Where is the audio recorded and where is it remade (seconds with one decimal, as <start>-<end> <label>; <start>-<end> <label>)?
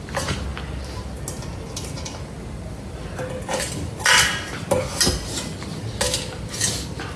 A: 0.0-7.2 recorded